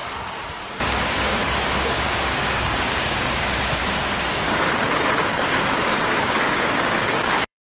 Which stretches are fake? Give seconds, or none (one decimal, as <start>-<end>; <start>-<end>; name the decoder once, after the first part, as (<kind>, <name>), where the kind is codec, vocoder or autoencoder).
0.7-3.8 (codec, DAC); 5.2-7.7